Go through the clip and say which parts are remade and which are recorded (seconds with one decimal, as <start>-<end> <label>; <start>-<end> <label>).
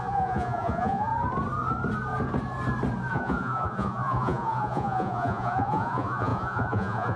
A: 0.0-1.1 remade; 1.1-3.1 recorded; 3.1-7.2 remade